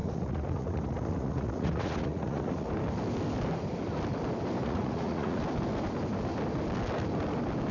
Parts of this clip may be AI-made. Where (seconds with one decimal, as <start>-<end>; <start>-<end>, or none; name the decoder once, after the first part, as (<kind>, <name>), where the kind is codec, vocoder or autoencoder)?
0.0-2.7 (vocoder, Vocos); 4.6-5.4